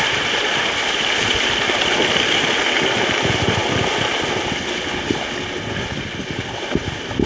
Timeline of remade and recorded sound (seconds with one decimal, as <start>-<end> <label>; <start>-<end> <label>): 0.0-7.3 recorded